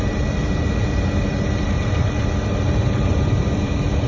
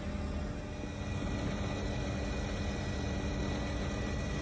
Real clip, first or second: second